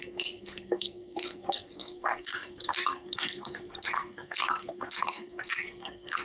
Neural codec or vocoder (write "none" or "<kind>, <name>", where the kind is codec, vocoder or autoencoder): codec, SNAC